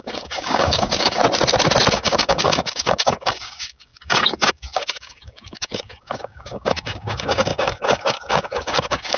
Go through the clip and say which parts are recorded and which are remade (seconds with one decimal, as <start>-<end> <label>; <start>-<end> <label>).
0.0-1.2 remade; 1.2-1.9 recorded; 1.9-9.2 remade